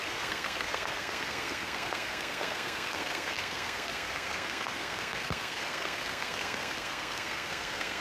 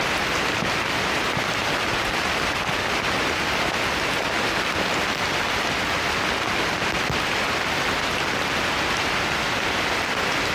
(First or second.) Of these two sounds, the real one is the second